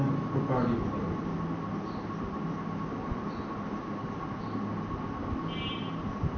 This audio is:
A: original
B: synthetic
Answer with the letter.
A